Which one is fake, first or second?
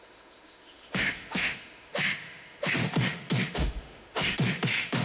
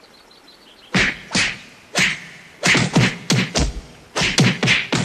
first